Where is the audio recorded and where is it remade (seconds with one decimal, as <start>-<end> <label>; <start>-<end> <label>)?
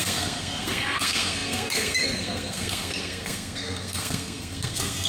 0.0-5.1 remade